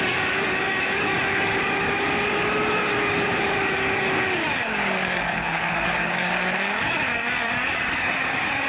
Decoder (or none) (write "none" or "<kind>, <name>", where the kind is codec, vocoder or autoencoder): codec, DAC